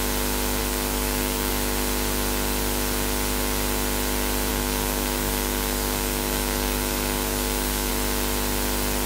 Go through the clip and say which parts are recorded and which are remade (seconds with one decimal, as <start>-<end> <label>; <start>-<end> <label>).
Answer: 0.0-0.6 recorded; 0.6-1.5 remade; 1.5-4.5 recorded; 4.5-7.9 remade; 7.9-9.1 recorded